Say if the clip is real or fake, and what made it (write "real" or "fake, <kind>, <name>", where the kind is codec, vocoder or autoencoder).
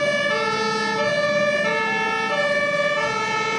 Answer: real